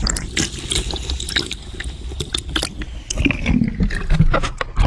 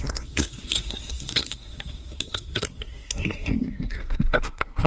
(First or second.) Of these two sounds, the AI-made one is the second